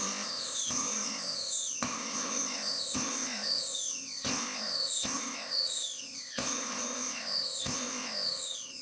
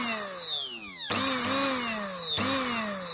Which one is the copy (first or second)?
first